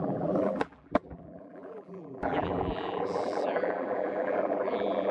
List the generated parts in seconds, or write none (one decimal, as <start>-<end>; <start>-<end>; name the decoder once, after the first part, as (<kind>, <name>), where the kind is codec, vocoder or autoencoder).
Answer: 0.0-5.1 (vocoder, BigVGAN v2)